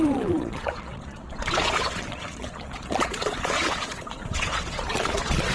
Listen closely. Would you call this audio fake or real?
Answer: fake